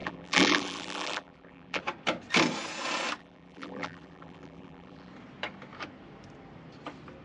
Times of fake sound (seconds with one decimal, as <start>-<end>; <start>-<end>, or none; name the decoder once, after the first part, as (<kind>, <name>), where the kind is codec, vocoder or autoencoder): 0.0-1.8 (vocoder, BigVGAN v2); 3.2-5.1